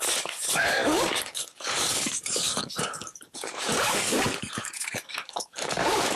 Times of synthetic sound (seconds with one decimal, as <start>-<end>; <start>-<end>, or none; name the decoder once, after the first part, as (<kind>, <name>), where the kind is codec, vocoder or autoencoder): 0.0-6.2 (codec, DAC)